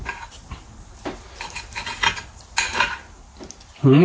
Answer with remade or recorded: recorded